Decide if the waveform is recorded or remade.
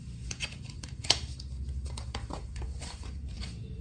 remade